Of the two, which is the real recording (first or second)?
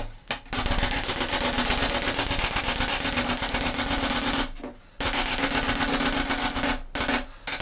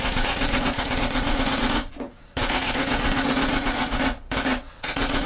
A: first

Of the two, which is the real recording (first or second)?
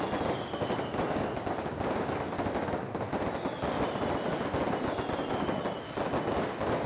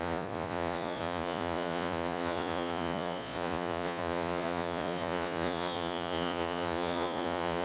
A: first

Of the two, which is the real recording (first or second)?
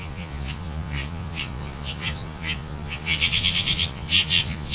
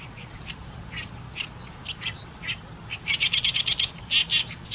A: second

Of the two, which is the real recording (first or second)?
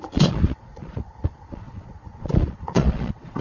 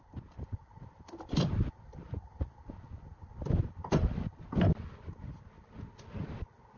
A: second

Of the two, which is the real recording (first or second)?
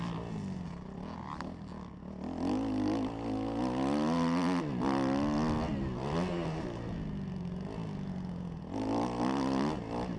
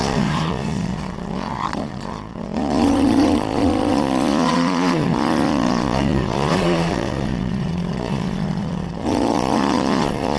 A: first